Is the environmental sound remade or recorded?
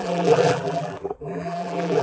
remade